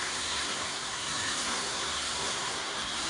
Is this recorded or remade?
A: remade